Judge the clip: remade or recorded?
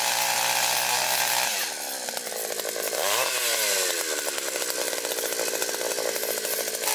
recorded